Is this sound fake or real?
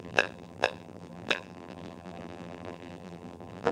fake